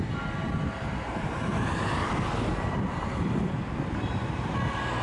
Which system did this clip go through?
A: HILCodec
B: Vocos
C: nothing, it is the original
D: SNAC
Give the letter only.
C